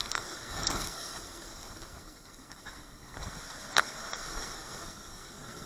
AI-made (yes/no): yes